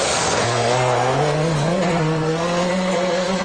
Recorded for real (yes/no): no